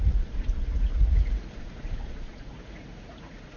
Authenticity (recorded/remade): remade